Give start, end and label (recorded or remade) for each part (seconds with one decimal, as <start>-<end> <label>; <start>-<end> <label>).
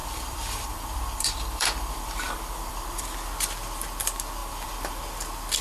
0.0-3.3 remade; 3.3-4.4 recorded; 4.4-5.0 remade; 5.0-5.6 recorded